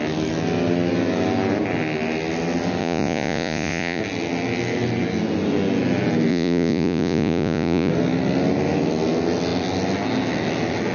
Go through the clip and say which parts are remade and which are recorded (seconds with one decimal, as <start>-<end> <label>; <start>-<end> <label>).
0.0-2.8 recorded; 2.8-4.0 remade; 4.0-6.3 recorded; 6.3-7.9 remade; 7.9-10.9 recorded